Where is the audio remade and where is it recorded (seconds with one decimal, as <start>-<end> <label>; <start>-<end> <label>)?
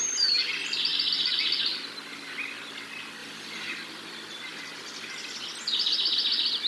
0.0-3.2 recorded; 3.2-3.7 remade; 3.7-6.7 recorded